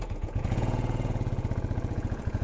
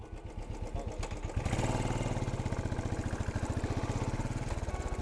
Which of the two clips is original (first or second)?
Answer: second